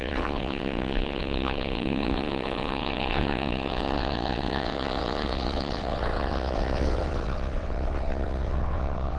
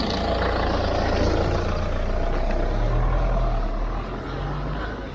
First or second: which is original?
second